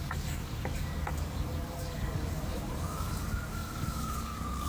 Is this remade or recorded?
remade